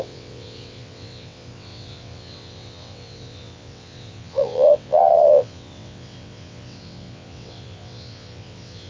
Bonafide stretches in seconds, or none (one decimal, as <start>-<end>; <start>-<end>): none